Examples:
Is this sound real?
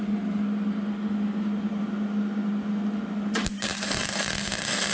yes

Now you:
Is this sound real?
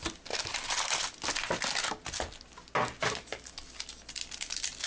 yes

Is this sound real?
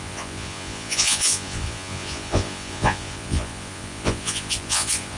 no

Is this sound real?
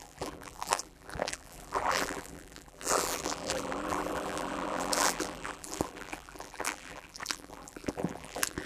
no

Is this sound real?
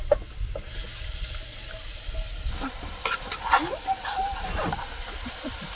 yes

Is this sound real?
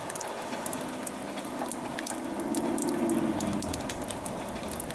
yes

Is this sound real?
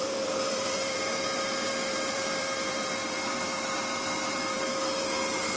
no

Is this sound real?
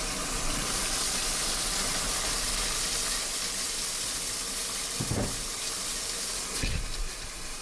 yes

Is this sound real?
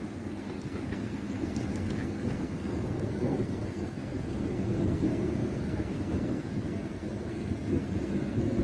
no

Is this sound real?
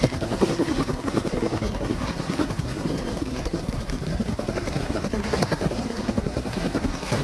no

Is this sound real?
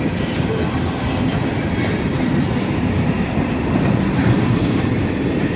no